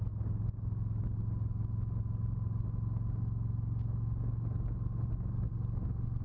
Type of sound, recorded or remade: recorded